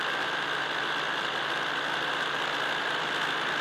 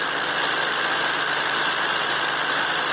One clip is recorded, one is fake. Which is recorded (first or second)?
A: first